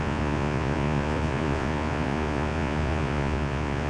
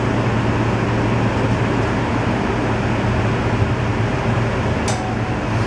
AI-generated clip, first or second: first